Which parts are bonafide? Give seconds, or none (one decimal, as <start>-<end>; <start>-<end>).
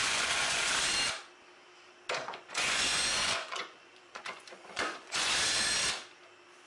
0.7-2.2; 5.3-6.7